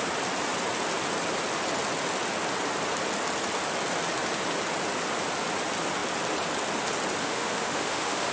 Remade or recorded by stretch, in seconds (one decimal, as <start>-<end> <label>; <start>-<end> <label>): 0.0-7.2 recorded; 7.2-8.3 remade